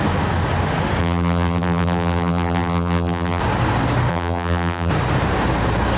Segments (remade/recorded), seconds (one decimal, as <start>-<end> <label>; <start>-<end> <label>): 0.0-1.0 recorded; 1.0-3.4 remade; 3.4-4.1 recorded; 4.1-4.9 remade; 4.9-6.0 recorded